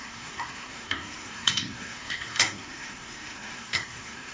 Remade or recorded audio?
remade